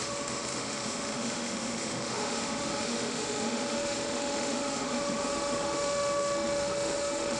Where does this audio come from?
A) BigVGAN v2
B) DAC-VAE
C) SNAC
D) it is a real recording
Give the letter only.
B